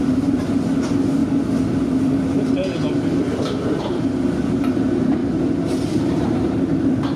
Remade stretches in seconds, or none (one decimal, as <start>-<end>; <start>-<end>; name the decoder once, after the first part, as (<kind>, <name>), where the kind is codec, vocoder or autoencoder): 0.0-1.2 (vocoder, BigVGAN v2); 3.8-5.2; 5.9-7.2